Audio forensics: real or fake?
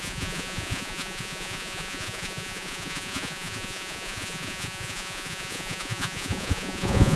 fake